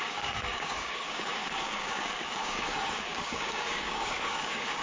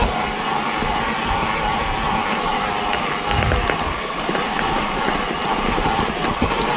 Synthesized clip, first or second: first